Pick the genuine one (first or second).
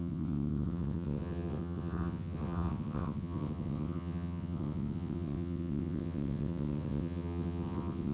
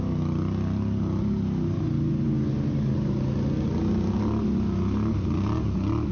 second